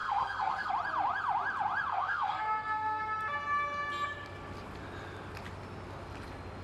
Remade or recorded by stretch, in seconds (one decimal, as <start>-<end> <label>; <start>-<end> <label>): 0.0-0.7 remade; 0.7-1.9 recorded; 1.9-3.0 remade; 3.0-6.6 recorded